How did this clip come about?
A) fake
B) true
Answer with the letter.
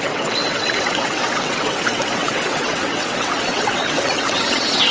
A